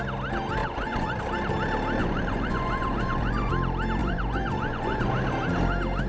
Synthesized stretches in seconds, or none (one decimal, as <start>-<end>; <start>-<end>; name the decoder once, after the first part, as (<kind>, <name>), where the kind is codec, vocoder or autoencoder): 0.6-1.2 (vocoder, Vocos); 2.0-3.5; 4.0-5.1